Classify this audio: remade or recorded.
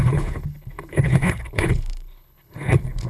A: remade